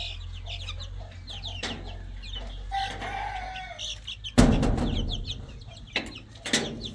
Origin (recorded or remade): recorded